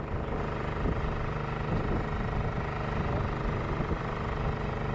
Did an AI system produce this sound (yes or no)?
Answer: no